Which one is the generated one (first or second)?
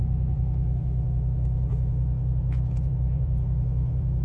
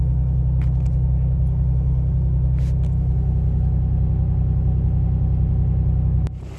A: first